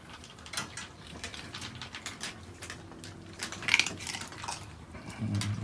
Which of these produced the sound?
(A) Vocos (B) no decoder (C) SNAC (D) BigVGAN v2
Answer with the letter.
B